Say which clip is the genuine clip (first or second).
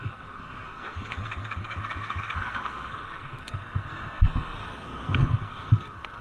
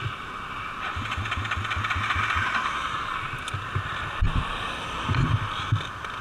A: second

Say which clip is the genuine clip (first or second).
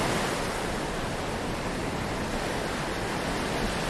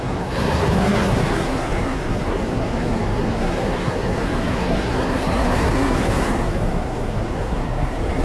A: first